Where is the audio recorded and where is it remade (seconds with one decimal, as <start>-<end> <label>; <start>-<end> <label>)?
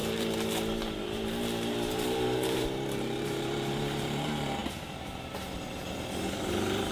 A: 0.0-6.9 remade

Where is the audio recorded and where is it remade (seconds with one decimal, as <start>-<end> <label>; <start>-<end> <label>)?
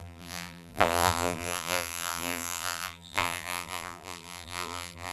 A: 0.0-5.1 remade